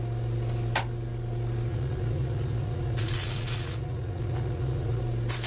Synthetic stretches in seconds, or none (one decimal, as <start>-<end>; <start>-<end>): 1.7-5.0